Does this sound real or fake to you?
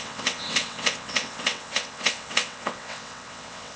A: fake